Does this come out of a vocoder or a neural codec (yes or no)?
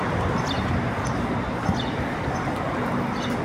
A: no